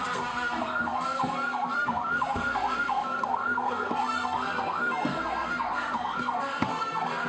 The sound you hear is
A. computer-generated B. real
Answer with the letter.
A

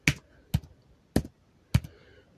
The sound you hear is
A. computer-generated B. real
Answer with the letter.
B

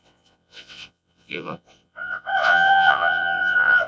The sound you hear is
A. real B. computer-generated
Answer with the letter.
B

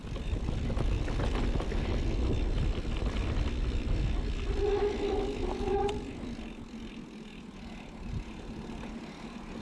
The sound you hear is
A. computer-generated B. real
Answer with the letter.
B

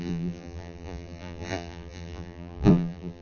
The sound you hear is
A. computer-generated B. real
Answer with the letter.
A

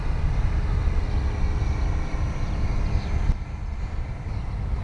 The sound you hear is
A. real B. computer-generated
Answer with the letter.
A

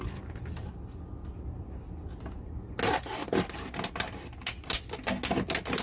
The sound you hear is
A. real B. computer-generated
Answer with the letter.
A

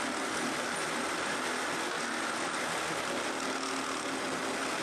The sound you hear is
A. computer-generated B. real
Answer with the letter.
B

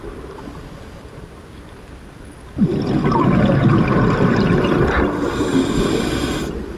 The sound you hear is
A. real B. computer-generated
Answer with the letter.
A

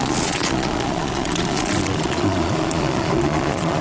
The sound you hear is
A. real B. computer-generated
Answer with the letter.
B